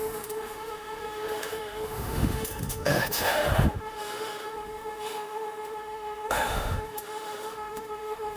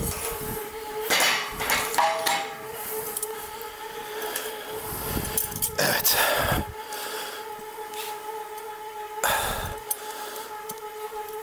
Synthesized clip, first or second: first